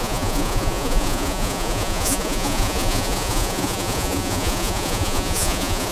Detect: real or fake fake